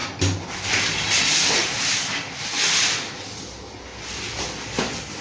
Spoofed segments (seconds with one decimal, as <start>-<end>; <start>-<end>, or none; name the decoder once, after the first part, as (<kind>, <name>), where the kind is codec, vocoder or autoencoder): none